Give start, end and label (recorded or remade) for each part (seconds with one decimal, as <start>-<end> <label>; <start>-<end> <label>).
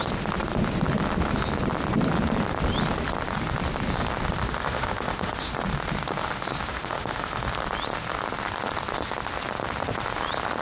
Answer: 0.0-4.4 recorded; 4.4-5.5 remade; 5.5-6.7 recorded; 6.7-7.5 remade; 7.5-10.6 recorded